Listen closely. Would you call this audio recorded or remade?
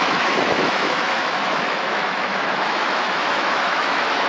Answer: remade